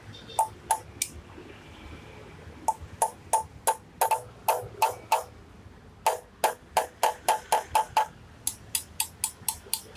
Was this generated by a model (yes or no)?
no